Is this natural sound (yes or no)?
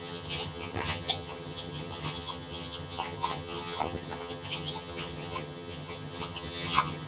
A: no